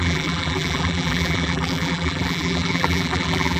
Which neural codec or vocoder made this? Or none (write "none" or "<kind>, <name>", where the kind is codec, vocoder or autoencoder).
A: vocoder, BigVGAN v2